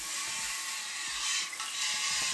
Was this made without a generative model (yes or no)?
yes